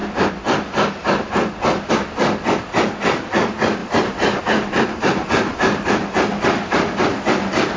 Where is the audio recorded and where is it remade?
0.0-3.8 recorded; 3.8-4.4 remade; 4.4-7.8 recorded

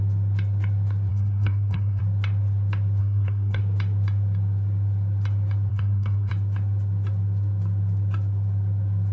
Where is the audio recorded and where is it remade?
0.0-1.1 recorded; 1.1-2.0 remade; 2.0-3.0 recorded; 3.0-3.6 remade; 3.6-5.7 recorded; 5.7-6.3 remade; 6.3-9.1 recorded

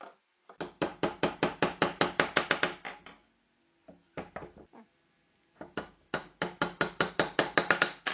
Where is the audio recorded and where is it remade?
0.0-8.1 recorded